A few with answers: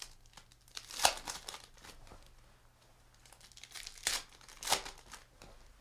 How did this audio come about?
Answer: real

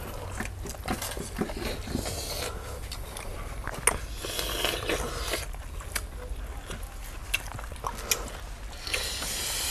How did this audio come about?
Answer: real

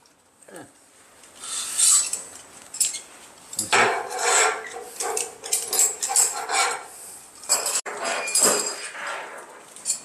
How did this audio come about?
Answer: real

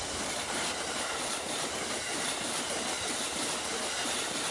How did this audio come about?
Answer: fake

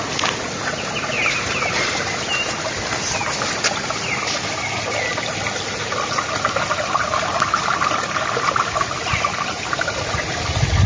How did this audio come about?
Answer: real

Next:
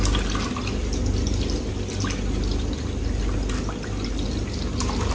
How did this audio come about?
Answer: real